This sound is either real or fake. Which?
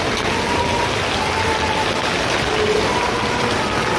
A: real